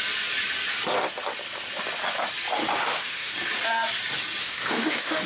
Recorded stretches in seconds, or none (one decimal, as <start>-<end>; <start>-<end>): 0.0-2.6; 3.3-4.4